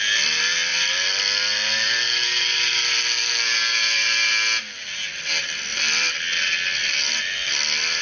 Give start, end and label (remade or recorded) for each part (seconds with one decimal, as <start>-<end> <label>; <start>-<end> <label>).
0.0-0.7 recorded; 0.7-3.3 remade; 3.3-5.7 recorded; 5.7-6.2 remade; 6.2-6.8 recorded; 6.8-8.0 remade